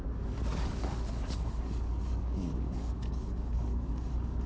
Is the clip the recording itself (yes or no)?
no